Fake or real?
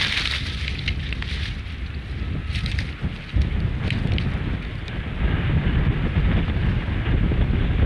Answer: real